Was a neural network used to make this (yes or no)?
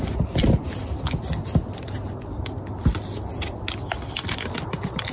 no